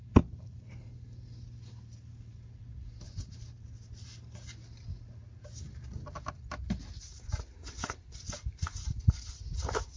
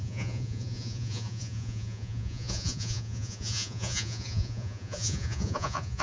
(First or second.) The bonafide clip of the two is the first